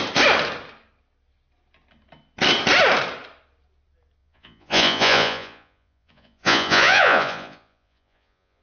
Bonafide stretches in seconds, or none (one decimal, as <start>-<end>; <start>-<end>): 0.0-4.2